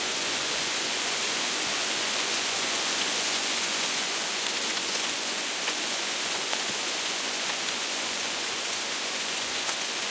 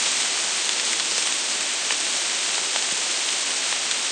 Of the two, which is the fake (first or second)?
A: first